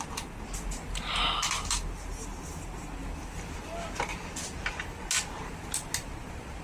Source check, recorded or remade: recorded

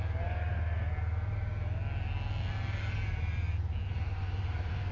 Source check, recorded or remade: recorded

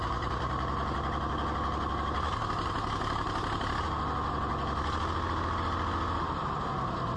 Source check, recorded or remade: recorded